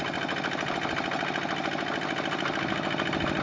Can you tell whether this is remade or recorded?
recorded